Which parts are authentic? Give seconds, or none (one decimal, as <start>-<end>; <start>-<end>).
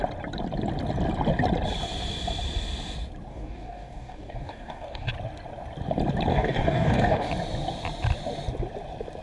0.0-3.3; 5.1-6.3; 7.3-9.2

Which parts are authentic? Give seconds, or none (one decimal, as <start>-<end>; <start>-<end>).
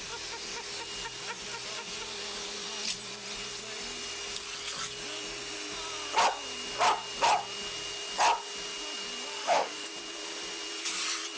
0.0-9.3; 9.9-11.4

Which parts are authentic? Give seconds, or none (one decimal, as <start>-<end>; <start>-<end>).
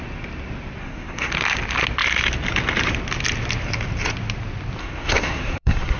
0.0-0.8; 1.3-4.8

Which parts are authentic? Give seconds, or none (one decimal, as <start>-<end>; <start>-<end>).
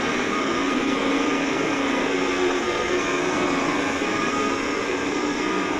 none